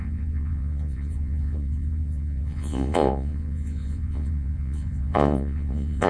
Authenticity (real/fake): fake